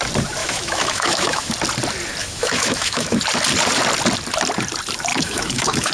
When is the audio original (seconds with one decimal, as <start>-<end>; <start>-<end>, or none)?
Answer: 0.0-0.4; 1.5-2.2; 3.2-5.1